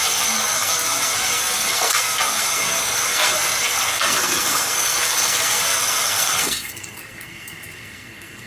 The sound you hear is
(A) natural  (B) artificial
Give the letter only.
B